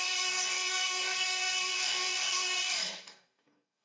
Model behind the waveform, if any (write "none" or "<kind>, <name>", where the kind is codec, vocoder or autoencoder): codec, DAC